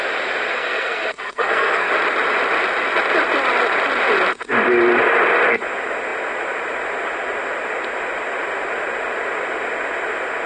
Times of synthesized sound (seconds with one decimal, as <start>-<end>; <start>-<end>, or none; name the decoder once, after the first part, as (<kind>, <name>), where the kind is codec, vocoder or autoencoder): 0.5-1.9 (codec, SNAC)